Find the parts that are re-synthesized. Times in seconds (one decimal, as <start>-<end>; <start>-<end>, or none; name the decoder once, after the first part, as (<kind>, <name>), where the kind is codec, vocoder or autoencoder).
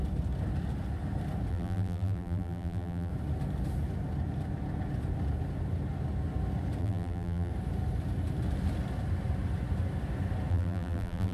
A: 1.5-3.1 (vocoder, BigVGAN v2); 6.8-7.5; 10.5-11.3